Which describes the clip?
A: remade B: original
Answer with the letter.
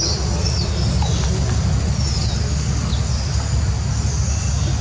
B